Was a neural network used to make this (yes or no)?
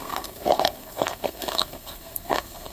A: yes